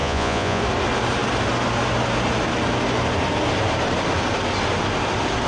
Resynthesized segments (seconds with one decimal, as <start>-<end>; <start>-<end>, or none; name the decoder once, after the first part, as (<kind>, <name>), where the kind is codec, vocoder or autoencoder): 0.0-0.6 (vocoder, Vocos)